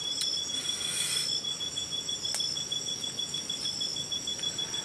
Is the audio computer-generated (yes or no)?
no